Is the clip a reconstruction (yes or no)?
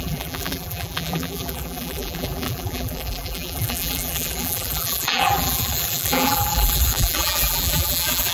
yes